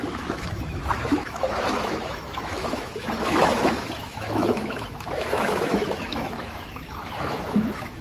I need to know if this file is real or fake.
fake